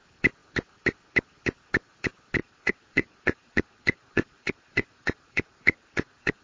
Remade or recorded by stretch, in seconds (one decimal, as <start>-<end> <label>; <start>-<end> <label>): 0.0-2.4 recorded; 2.4-6.4 remade